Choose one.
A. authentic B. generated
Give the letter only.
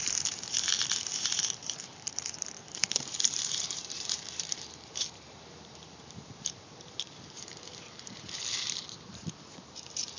B